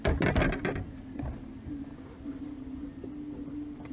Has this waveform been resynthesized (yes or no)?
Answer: no